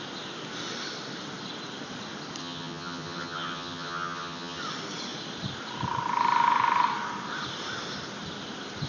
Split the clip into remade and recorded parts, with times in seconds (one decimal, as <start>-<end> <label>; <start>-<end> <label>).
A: 0.0-2.4 recorded; 2.4-4.6 remade; 4.6-8.9 recorded